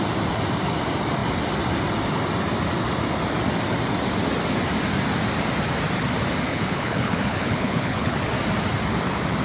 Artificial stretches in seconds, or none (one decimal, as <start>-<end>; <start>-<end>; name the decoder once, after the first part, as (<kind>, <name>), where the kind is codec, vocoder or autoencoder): 6.5-8.2 (codec, HILCodec)